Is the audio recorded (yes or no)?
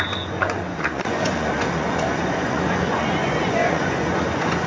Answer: no